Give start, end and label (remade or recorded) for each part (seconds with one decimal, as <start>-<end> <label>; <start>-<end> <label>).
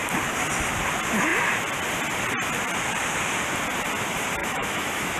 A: 0.0-4.4 recorded; 4.4-5.2 remade